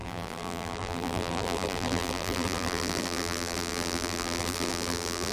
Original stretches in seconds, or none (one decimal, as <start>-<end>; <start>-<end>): none